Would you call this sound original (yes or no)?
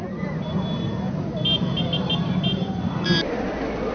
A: yes